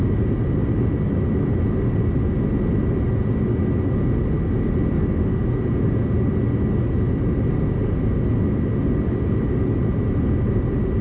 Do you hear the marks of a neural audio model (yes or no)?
no